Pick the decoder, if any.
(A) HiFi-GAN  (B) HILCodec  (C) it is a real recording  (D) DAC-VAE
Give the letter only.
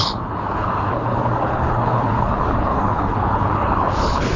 B